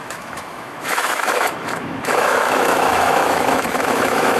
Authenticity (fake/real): fake